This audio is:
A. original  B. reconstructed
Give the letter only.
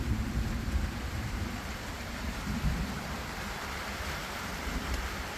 B